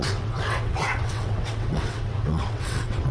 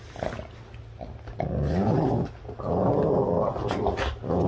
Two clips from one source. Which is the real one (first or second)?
second